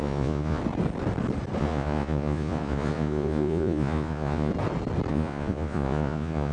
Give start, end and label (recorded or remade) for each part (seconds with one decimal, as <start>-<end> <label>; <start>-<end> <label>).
0.0-0.6 remade; 0.6-1.6 recorded; 1.6-4.5 remade; 4.5-5.1 recorded; 5.1-6.5 remade